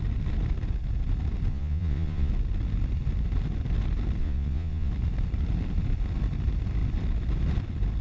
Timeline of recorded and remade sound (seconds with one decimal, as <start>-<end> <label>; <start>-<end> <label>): 0.0-1.5 recorded; 1.5-2.3 remade; 2.3-4.2 recorded; 4.2-4.9 remade; 4.9-8.0 recorded